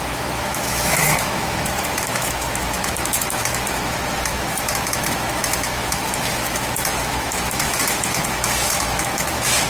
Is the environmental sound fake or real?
fake